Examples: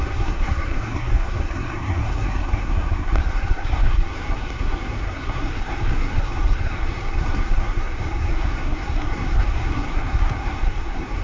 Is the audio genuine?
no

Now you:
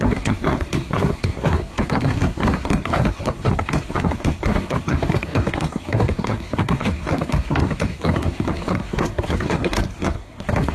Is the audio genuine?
no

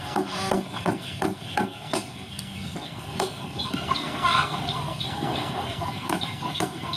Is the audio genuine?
no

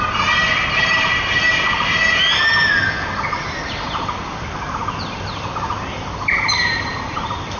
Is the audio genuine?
yes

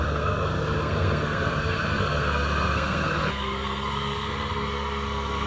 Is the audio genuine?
no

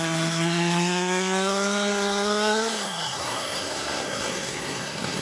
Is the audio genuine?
no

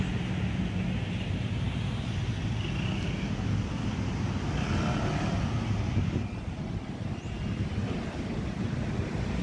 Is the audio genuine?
yes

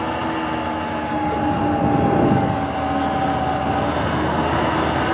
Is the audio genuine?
yes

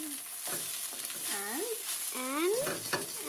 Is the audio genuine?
yes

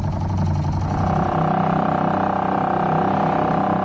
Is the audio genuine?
yes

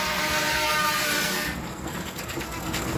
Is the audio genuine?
no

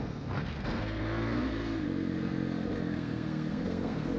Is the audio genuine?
no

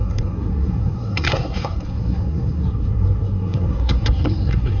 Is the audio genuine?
no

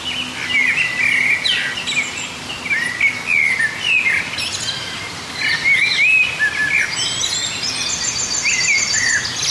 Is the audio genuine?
yes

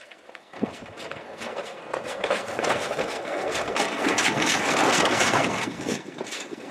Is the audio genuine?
no